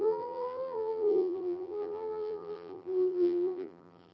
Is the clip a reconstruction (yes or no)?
yes